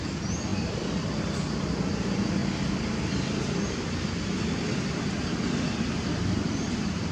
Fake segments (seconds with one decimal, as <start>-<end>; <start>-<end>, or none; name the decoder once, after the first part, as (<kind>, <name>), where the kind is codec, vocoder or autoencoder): 0.5-1.1 (vocoder, BigVGAN v2); 2.4-5.1